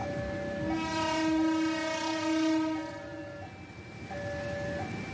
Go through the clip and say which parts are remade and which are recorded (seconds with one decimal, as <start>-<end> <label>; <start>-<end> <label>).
0.0-5.1 recorded